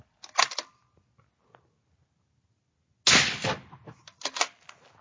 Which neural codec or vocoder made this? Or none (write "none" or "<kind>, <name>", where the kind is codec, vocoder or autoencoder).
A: none